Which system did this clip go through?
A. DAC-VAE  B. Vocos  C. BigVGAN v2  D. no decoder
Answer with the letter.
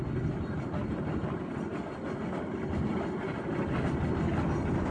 D